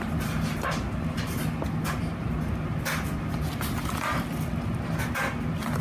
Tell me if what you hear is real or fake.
real